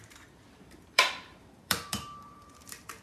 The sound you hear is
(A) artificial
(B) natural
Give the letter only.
A